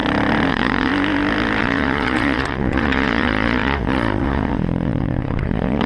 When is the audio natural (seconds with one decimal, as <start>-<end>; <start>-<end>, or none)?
0.0-0.5; 0.9-1.6